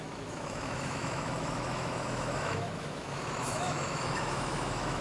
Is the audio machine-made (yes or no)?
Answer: yes